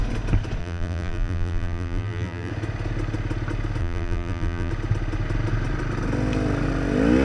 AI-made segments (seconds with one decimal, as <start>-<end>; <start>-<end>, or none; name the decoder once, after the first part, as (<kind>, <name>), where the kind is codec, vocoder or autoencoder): 0.6-2.5 (vocoder, BigVGAN v2); 3.8-4.7